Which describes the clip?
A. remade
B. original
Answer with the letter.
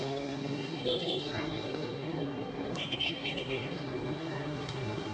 A